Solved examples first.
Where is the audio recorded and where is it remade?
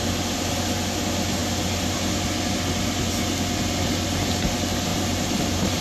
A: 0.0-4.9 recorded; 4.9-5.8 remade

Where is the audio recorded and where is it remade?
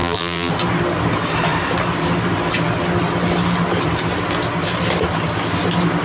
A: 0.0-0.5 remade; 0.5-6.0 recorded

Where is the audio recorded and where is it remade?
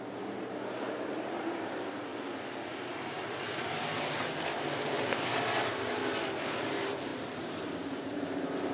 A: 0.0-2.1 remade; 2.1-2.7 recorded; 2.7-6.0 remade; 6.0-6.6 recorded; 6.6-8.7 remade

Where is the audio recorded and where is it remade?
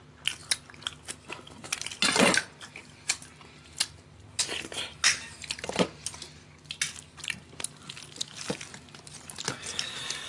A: 0.0-10.3 recorded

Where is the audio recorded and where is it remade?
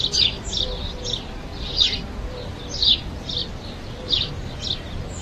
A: 0.0-3.4 recorded; 3.4-4.3 remade; 4.3-5.2 recorded